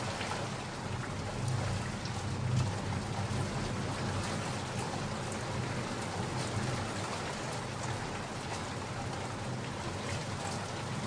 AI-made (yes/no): no